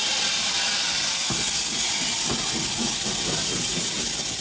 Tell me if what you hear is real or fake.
real